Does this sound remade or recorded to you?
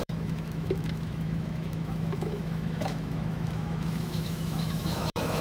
remade